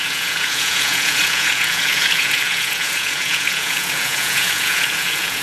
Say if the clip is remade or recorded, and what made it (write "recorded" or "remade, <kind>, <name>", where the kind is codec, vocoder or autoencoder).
remade, vocoder, Vocos